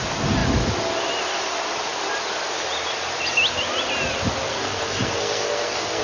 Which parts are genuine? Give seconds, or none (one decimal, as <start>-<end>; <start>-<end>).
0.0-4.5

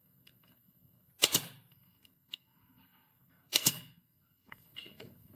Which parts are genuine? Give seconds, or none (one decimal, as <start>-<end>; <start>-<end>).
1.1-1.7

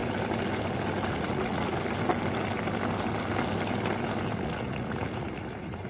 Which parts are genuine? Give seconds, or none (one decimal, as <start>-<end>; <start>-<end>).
0.0-1.1; 1.7-4.3

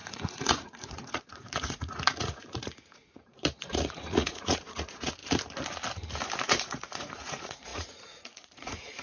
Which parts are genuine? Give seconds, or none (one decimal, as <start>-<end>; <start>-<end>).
5.2-6.6